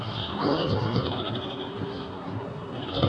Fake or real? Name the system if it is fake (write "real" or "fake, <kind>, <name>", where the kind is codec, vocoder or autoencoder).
fake, codec, SNAC